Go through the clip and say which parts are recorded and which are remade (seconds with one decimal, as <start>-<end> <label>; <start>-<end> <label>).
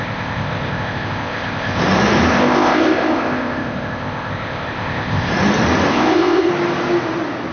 0.0-1.8 remade; 1.8-2.3 recorded; 2.3-5.3 remade; 5.3-5.9 recorded; 5.9-6.5 remade; 6.5-7.5 recorded